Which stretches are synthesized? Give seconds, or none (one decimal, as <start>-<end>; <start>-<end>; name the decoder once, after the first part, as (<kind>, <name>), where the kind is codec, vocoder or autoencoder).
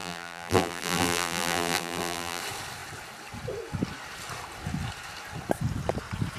0.0-2.4 (vocoder, BigVGAN v2)